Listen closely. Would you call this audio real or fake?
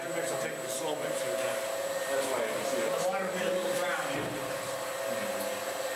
real